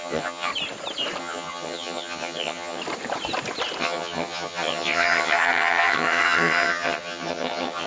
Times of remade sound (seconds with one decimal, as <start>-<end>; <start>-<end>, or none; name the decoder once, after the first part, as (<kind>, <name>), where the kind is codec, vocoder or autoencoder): 0.0-0.5 (vocoder, HiFi-GAN); 1.2-2.8; 3.8-7.9